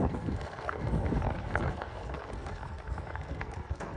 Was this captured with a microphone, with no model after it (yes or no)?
no